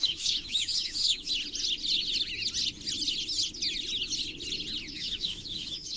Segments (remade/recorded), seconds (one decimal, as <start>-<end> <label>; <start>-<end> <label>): 0.0-1.3 remade; 1.3-4.9 recorded; 4.9-6.0 remade